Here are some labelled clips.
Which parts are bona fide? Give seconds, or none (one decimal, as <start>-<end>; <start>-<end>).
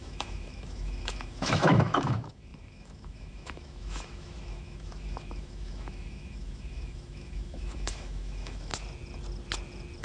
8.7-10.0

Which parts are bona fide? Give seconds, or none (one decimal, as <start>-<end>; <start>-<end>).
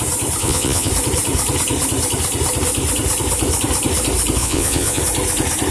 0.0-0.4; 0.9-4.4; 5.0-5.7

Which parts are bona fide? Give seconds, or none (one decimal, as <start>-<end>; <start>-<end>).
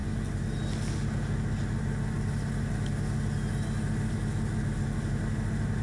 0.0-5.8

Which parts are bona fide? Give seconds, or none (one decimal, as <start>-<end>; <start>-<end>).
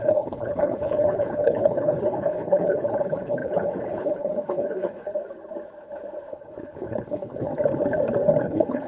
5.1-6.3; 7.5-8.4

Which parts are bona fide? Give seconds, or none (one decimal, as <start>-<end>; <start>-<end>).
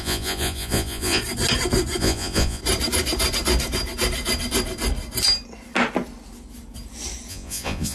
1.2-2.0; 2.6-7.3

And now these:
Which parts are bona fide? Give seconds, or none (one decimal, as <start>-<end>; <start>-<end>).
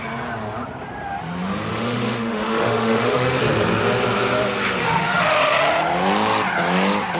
0.0-1.7; 3.4-4.8; 5.4-7.2